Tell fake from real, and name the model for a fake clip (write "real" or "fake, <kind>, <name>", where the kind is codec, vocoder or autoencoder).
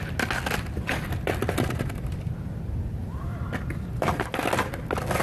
real